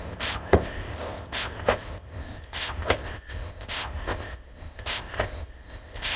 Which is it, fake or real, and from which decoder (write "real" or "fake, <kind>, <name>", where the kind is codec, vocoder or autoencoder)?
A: fake, codec, ZipCodec